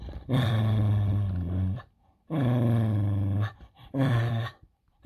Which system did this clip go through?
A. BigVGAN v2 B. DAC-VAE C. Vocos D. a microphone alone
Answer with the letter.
A